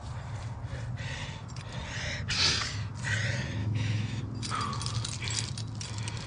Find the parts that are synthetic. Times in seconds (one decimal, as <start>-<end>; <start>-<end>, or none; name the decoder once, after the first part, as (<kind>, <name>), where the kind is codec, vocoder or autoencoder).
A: 3.6-4.2 (autoencoder, DAC-VAE)